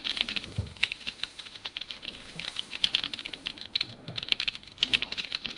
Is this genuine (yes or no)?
no